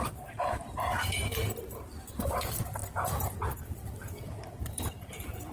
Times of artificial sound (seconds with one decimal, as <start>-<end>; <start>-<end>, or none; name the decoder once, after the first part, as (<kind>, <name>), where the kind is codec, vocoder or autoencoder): 0.0-0.9 (vocoder, BigVGAN v2); 1.6-2.8; 3.4-5.5